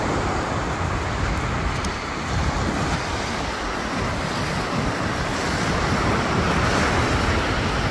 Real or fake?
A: real